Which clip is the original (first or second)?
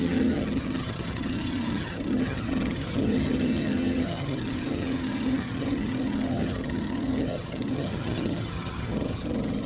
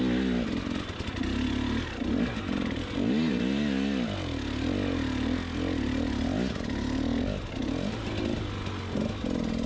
second